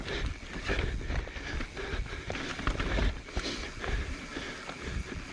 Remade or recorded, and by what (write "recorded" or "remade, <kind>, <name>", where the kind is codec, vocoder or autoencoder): recorded